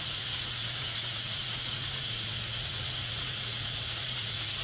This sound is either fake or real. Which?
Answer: fake